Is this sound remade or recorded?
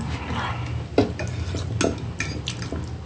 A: recorded